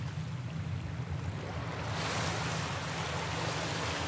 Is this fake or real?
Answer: real